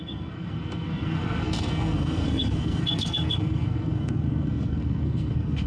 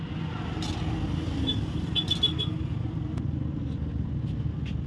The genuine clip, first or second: second